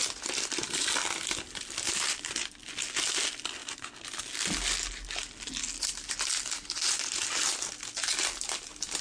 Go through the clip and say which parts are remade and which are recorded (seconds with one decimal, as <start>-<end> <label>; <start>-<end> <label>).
0.0-9.0 recorded